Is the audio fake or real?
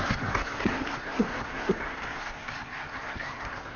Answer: fake